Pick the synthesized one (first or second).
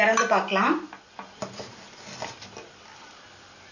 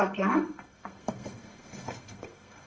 second